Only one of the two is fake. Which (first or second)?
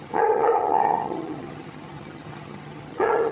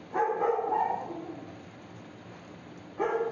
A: first